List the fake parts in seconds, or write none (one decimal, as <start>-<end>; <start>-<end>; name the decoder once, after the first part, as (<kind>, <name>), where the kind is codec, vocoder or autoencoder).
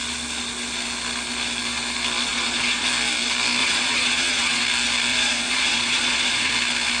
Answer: 2.3-2.9 (vocoder, Vocos); 3.6-4.6; 5.1-6.5